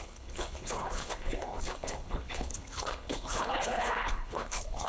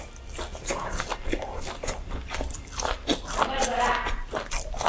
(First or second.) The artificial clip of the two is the first